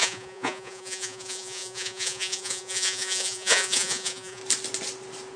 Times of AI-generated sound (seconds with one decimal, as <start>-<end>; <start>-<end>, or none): 0.0-4.4